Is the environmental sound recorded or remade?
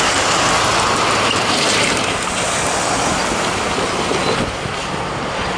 recorded